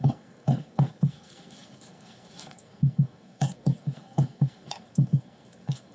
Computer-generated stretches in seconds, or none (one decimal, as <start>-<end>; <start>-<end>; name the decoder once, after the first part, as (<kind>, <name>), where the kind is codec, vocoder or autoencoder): 0.0-5.9 (codec, SNAC)